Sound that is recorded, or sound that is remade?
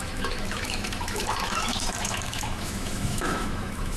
remade